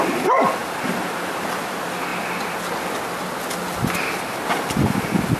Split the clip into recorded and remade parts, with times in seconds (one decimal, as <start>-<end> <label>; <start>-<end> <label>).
0.0-5.4 recorded

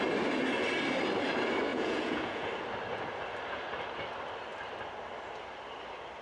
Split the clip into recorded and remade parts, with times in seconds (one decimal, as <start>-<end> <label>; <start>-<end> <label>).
0.0-1.7 recorded; 1.7-2.5 remade; 2.5-6.2 recorded

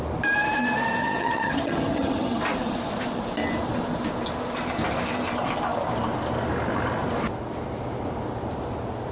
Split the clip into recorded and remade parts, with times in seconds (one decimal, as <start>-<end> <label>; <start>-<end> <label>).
0.0-1.0 recorded; 1.0-2.4 remade; 2.4-9.1 recorded

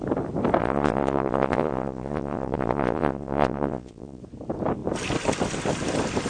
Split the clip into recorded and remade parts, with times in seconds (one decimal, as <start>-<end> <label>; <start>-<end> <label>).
0.0-0.6 recorded; 0.6-4.2 remade; 4.2-6.3 recorded

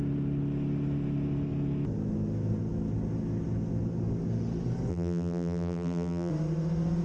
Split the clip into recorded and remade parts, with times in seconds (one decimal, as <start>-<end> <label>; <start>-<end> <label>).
0.0-4.9 recorded; 4.9-6.3 remade; 6.3-7.0 recorded

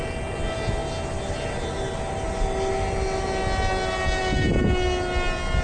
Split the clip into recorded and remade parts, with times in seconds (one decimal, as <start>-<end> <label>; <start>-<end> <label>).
0.0-5.6 recorded